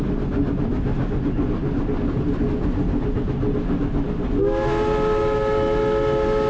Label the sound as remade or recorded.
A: recorded